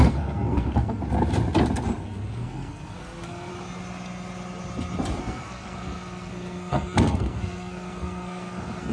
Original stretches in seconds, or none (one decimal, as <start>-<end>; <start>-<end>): 1.0-2.0; 3.5-5.2